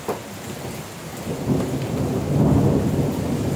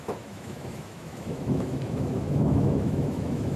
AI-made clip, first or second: second